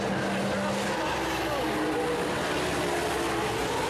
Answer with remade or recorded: recorded